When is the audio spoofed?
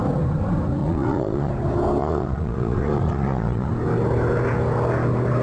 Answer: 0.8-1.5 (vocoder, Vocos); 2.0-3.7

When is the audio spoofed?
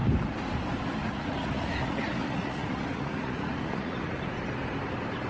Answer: 1.0-4.2 (vocoder, Vocos)